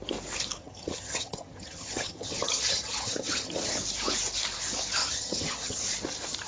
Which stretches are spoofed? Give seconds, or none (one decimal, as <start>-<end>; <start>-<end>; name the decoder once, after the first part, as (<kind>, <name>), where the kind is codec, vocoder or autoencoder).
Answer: 0.6-3.7 (vocoder, HiFi-GAN); 5.0-5.8